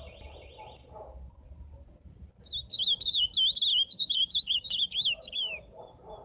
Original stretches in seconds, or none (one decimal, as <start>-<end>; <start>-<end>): 0.0-2.7; 3.2-3.7; 5.8-6.2